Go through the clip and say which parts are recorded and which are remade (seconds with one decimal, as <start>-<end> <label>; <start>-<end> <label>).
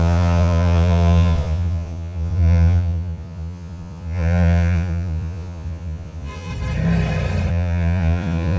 0.0-6.5 remade; 6.5-7.5 recorded; 7.5-8.6 remade